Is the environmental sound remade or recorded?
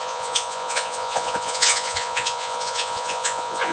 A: remade